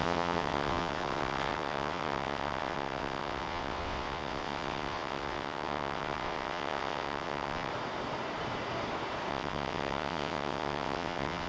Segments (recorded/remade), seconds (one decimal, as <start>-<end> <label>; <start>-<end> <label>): 0.0-7.7 remade; 7.7-9.3 recorded; 9.3-11.5 remade